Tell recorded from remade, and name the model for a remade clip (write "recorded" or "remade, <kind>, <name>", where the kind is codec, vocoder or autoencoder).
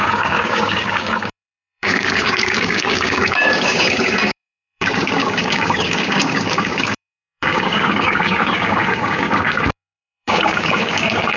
remade, codec, DAC